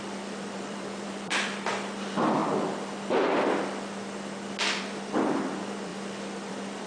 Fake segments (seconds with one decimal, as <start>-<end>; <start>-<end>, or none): 0.0-2.4; 4.8-6.9